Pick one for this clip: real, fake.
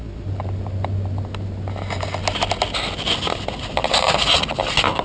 real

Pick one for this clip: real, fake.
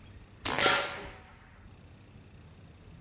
real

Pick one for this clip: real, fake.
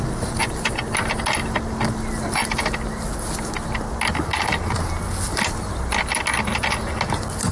real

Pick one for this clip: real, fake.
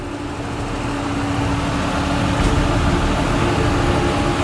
real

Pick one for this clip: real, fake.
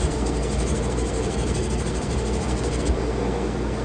fake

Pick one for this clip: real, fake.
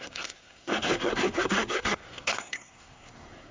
fake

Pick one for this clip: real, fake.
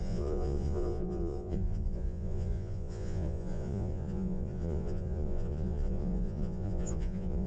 fake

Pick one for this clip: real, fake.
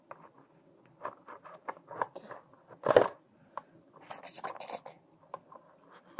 real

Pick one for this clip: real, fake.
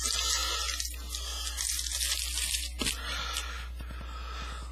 real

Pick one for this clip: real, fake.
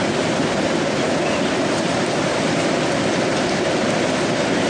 real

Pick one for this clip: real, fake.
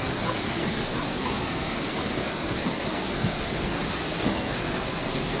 fake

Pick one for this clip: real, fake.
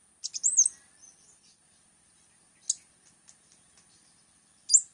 real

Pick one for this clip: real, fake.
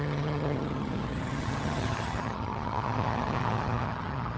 fake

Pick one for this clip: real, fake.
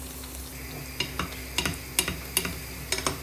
real